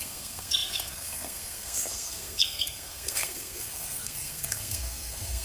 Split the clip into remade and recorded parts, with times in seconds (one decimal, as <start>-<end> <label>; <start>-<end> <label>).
0.0-5.4 remade

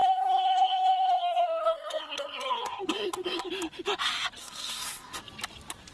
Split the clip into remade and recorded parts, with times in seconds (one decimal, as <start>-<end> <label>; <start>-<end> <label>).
0.0-3.5 remade; 3.5-4.4 recorded; 4.4-5.2 remade; 5.2-5.9 recorded

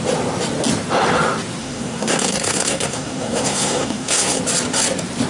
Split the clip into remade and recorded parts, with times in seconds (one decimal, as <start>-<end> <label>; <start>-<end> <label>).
0.0-1.6 recorded; 1.6-4.4 remade; 4.4-5.3 recorded

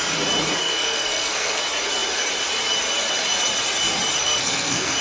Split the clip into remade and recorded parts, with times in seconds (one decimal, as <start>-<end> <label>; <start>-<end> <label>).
0.0-0.6 recorded; 0.6-1.6 remade; 1.6-4.2 recorded; 4.2-5.0 remade

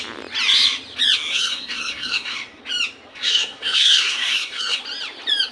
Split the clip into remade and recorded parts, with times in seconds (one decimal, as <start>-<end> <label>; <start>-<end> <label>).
0.0-1.3 recorded; 1.3-2.6 remade; 2.6-3.1 recorded; 3.1-4.8 remade; 4.8-5.5 recorded